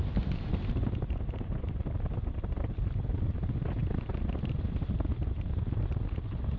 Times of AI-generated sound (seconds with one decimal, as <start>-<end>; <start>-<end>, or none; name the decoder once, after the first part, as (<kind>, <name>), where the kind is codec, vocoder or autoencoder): none